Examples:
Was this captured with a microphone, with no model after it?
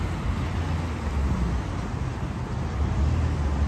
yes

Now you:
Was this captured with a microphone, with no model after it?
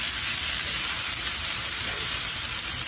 yes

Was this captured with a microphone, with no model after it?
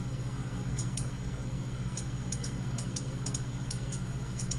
no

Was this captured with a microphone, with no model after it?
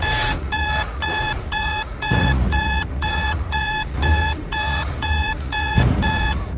no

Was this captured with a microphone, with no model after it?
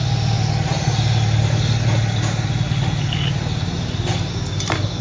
yes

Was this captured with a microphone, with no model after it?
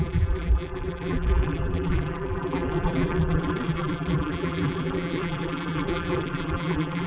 no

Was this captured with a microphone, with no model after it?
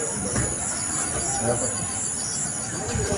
yes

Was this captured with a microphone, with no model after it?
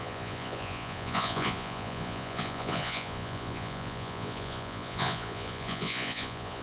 no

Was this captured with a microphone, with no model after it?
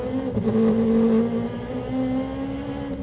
yes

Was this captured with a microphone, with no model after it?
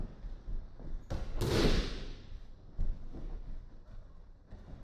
yes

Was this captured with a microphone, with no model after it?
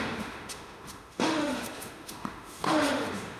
no